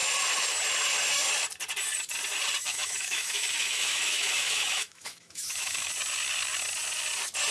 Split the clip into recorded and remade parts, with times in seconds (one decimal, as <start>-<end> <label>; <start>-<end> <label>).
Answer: 0.0-2.7 recorded; 2.7-5.9 remade; 5.9-7.5 recorded